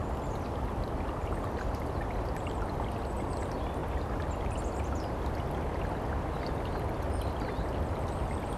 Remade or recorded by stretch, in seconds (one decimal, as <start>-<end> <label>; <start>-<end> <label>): 0.0-8.6 recorded